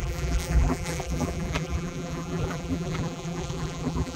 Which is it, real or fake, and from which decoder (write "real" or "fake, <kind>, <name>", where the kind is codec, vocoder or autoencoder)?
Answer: fake, vocoder, BigVGAN v2